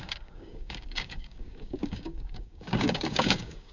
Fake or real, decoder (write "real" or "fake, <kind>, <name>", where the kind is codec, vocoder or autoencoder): fake, codec, DAC